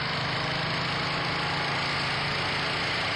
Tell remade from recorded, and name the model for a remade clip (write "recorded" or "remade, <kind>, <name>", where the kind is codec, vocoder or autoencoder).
recorded